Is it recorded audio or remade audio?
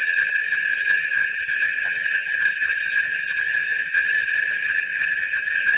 remade